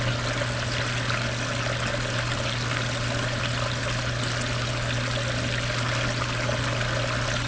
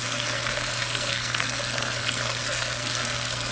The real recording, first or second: first